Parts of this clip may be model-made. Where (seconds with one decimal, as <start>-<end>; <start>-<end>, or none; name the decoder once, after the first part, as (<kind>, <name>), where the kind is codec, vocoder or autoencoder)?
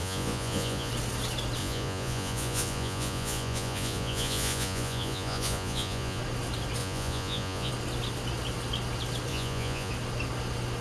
0.0-0.9 (vocoder, Vocos); 1.6-6.2; 6.8-7.7; 9.3-9.9